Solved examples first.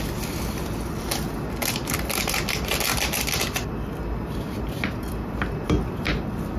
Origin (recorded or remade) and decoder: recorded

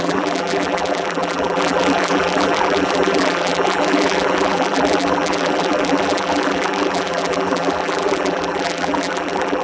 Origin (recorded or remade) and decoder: remade, vocoder, BigVGAN v2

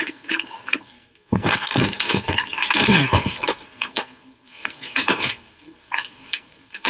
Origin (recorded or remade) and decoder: remade, codec, SNAC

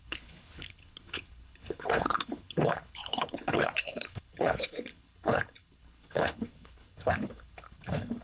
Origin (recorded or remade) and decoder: remade, codec, HILCodec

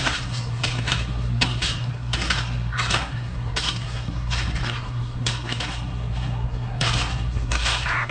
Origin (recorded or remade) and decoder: remade, codec, SNAC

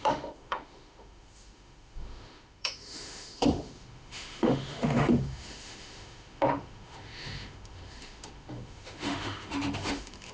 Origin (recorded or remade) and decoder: remade, autoencoder, DAC-VAE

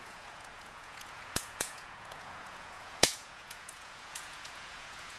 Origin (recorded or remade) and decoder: remade, vocoder, Vocos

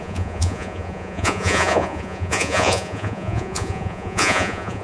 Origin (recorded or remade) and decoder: remade, vocoder, Vocos